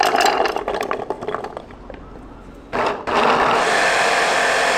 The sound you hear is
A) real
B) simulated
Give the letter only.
A